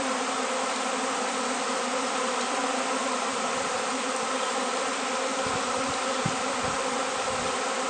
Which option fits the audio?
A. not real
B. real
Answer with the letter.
A